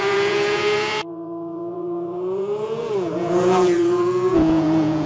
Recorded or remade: remade